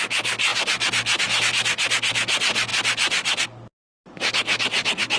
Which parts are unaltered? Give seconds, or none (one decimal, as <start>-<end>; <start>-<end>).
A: 0.0-5.2